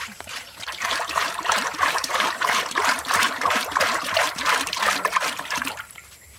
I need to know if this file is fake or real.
fake